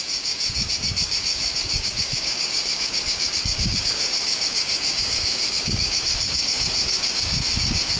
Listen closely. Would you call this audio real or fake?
fake